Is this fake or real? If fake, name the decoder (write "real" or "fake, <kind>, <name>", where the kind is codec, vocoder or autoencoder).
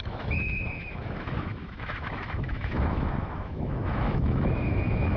fake, autoencoder, DAC-VAE